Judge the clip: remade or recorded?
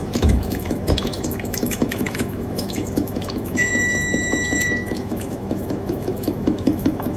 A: remade